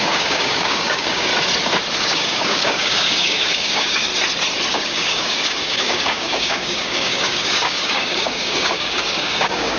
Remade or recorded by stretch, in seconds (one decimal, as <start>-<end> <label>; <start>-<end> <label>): 0.0-1.3 remade; 1.3-2.0 recorded; 2.0-4.1 remade; 4.1-4.7 recorded; 4.7-9.8 remade